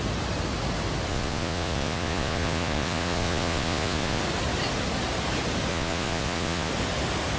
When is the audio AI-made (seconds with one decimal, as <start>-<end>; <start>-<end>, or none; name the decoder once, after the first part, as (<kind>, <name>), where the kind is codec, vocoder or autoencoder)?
1.1-4.2 (vocoder, Vocos); 5.7-6.7